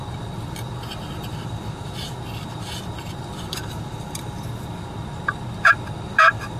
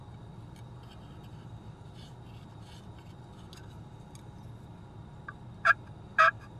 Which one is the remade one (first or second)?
first